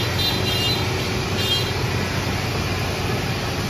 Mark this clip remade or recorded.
recorded